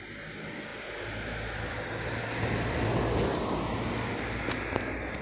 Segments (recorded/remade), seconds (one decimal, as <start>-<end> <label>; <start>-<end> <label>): 0.0-5.2 recorded